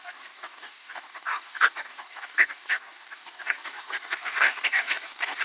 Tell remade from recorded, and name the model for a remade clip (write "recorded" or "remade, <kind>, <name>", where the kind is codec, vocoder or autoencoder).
remade, codec, DAC